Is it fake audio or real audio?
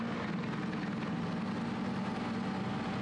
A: real